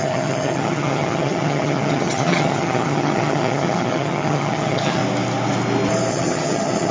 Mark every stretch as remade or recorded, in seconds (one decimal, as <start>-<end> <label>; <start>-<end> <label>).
0.0-5.0 remade; 5.0-6.1 recorded; 6.1-6.9 remade